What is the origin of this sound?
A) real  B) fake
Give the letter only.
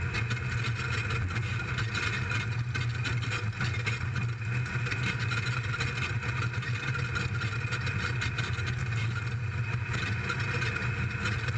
A